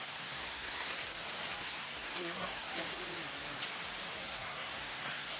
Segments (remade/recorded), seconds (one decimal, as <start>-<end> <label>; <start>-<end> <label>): 0.0-1.0 remade; 1.0-1.6 recorded; 1.6-2.7 remade; 2.7-4.2 recorded; 4.2-5.4 remade